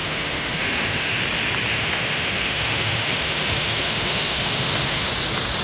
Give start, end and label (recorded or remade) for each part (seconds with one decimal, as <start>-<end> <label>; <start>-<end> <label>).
0.0-1.2 remade; 1.2-1.7 recorded; 1.7-5.1 remade; 5.1-5.6 recorded